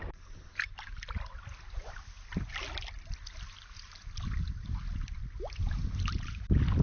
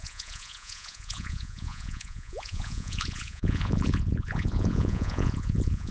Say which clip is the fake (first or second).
second